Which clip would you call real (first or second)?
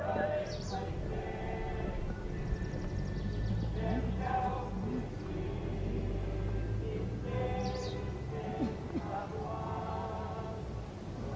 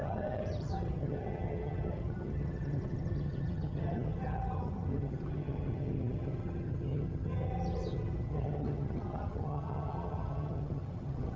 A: first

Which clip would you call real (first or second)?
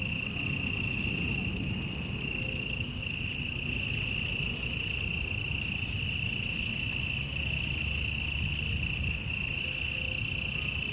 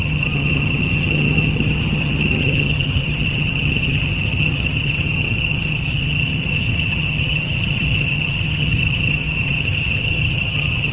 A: first